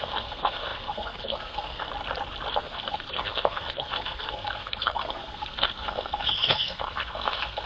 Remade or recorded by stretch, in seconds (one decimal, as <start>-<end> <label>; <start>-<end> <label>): 0.0-1.9 remade; 1.9-2.5 recorded; 2.5-7.7 remade